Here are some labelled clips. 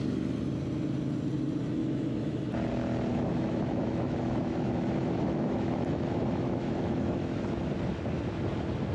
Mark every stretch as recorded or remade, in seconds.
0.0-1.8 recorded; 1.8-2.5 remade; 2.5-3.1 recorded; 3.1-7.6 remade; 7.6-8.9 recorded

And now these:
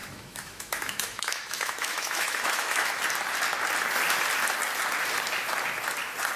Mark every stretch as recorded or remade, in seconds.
0.0-3.0 remade; 3.0-6.4 recorded

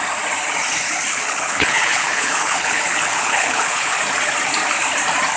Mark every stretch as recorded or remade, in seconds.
0.0-1.1 recorded; 1.1-4.0 remade; 4.0-5.4 recorded

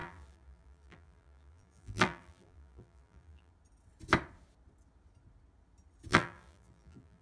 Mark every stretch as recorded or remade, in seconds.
0.0-3.5 remade; 3.5-6.1 recorded; 6.1-7.2 remade

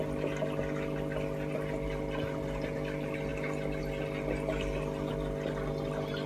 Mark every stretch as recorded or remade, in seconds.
0.0-6.3 recorded

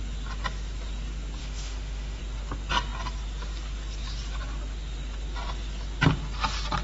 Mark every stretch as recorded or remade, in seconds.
0.0-1.4 recorded; 1.4-2.2 remade; 2.2-6.8 recorded